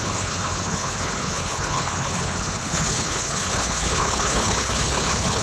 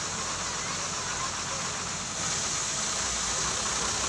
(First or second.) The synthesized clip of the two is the first